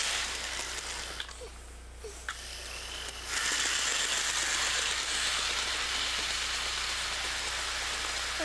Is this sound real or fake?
real